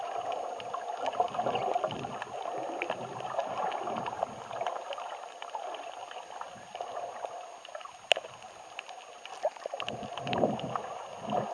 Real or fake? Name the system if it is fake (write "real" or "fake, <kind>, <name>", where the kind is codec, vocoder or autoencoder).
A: real